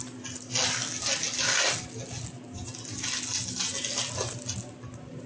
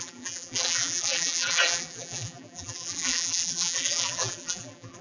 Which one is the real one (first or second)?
first